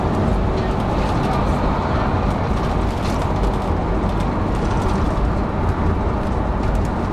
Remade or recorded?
recorded